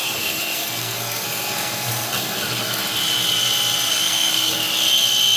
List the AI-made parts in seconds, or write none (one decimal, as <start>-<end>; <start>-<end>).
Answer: 0.0-2.8; 3.9-4.6